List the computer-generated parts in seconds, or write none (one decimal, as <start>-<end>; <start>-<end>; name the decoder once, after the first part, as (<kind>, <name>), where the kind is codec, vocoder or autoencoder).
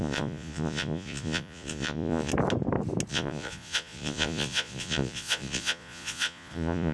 0.0-2.3 (vocoder, Vocos); 3.1-6.9